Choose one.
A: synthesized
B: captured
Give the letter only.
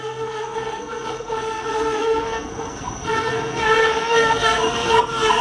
A